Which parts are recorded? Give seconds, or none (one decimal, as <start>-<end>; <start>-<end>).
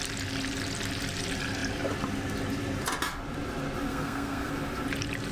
0.0-3.9; 4.5-5.3